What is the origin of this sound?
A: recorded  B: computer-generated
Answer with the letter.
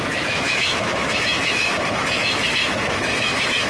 B